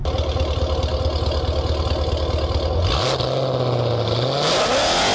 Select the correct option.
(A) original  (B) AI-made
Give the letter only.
A